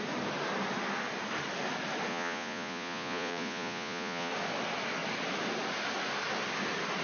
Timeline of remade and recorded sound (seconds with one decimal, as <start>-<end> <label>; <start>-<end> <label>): 0.0-2.1 recorded; 2.1-4.3 remade; 4.3-7.0 recorded